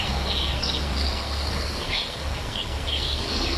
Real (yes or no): no